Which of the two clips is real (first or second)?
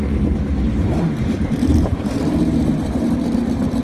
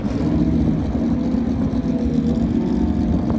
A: second